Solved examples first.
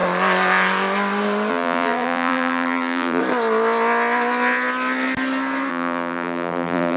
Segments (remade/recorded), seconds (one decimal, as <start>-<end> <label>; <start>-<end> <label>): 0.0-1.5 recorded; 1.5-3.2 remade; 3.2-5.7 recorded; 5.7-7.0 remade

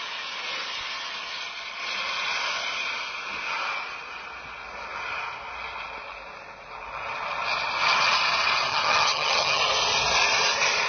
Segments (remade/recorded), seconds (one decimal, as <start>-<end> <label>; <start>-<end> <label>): 0.0-8.7 recorded; 8.7-9.6 remade; 9.6-10.9 recorded

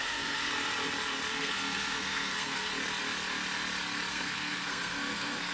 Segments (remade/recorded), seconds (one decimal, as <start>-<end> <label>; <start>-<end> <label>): 0.0-0.5 remade; 0.5-1.3 recorded; 1.3-2.7 remade; 2.7-4.1 recorded; 4.1-5.5 remade

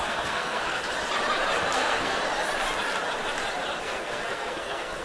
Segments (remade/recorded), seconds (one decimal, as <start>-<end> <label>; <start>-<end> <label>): 0.0-0.8 remade; 0.8-1.7 recorded; 1.7-2.2 remade; 2.2-3.8 recorded; 3.8-5.0 remade

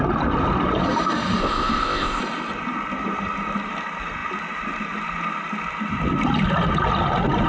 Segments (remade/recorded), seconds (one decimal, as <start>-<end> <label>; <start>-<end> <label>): 0.0-1.4 recorded; 1.4-2.2 remade; 2.2-7.5 recorded

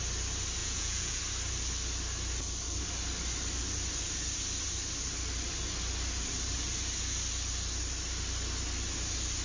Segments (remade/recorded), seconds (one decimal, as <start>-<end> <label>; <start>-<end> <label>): 0.0-0.6 recorded; 0.6-1.2 remade; 1.2-9.4 recorded